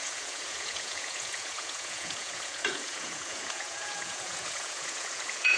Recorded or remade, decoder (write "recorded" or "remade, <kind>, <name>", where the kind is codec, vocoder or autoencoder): remade, vocoder, Vocos